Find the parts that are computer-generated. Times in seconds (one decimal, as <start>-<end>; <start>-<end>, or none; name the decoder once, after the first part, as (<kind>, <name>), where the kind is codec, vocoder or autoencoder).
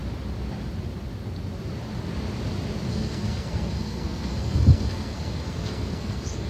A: 2.9-6.5 (codec, SNAC)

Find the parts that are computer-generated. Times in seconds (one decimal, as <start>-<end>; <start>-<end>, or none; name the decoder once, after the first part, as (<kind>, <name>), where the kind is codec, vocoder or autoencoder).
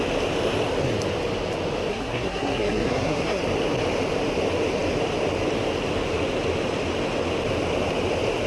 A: 1.9-3.4 (codec, SNAC)